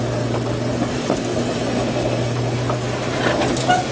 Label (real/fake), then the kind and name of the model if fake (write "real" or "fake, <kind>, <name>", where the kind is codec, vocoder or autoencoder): real